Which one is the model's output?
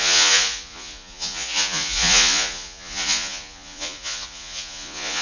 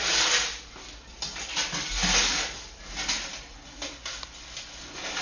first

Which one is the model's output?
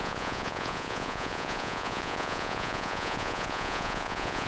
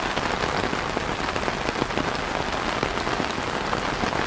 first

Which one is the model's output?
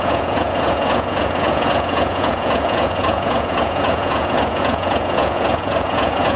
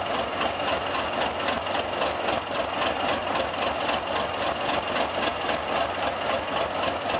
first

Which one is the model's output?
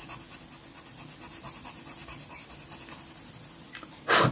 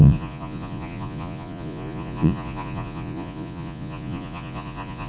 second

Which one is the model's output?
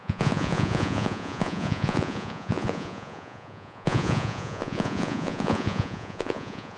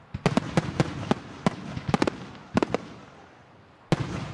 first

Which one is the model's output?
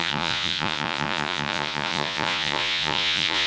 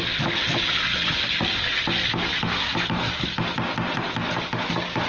first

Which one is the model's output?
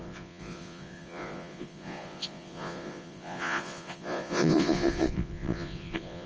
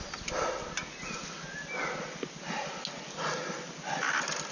first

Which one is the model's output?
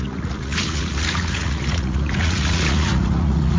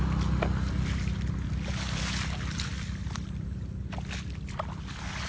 first